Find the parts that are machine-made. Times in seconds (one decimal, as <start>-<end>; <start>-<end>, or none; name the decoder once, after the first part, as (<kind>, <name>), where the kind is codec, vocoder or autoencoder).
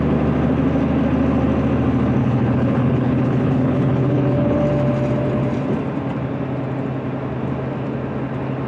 2.2-4.6 (codec, HILCodec)